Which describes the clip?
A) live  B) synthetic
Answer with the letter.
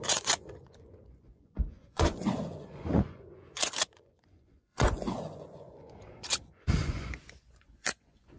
B